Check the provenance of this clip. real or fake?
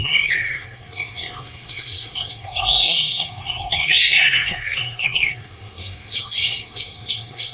fake